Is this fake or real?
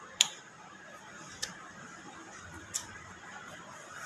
fake